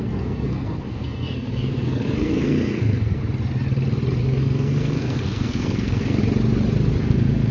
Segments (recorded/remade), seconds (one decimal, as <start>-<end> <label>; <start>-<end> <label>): 0.0-3.2 remade; 3.2-4.2 recorded; 4.2-6.2 remade; 6.2-7.0 recorded; 7.0-7.5 remade